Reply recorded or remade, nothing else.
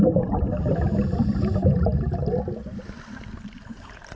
recorded